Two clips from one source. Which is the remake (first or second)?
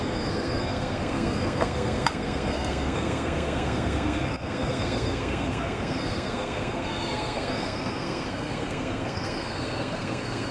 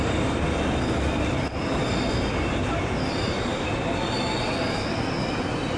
first